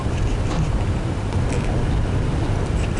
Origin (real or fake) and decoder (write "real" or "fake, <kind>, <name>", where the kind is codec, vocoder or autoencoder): real